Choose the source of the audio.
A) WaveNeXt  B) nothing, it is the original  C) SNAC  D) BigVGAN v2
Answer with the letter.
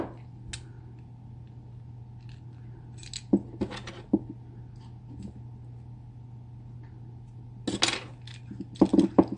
B